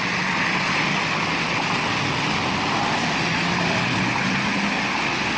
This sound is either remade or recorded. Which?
recorded